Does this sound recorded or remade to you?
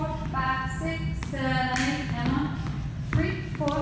recorded